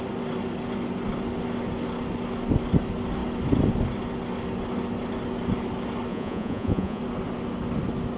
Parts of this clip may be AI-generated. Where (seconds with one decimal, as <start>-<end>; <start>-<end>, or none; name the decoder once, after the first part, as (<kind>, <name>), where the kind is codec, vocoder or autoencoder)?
6.1-7.0 (vocoder, Vocos)